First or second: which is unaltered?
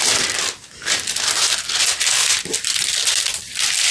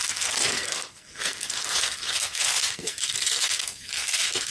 first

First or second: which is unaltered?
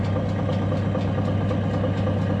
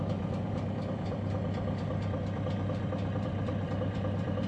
first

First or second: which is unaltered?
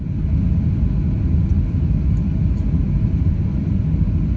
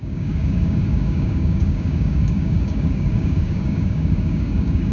first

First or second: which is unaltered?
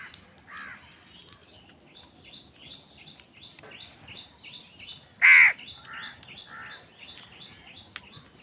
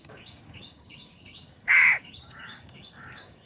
first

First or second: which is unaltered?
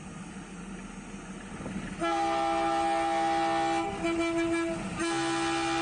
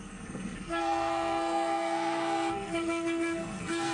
first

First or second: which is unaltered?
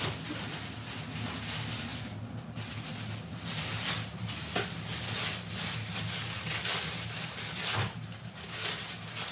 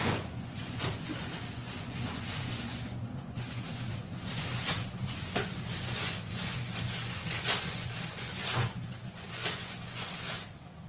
first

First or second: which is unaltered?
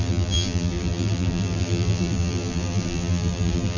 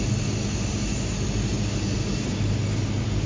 second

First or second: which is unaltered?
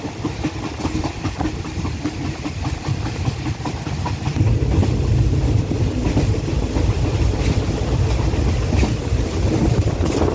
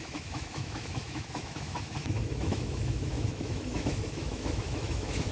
first